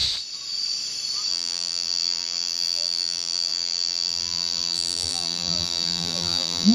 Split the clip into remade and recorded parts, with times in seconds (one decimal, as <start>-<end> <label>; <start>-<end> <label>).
0.0-1.3 recorded; 1.3-6.7 remade